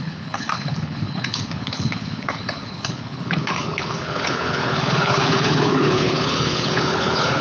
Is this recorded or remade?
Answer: remade